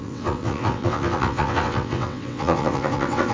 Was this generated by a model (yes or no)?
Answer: yes